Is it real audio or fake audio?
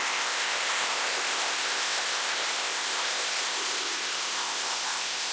fake